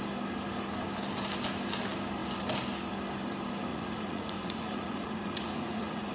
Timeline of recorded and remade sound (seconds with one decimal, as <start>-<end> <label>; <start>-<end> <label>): 0.0-3.7 recorded; 3.7-6.1 remade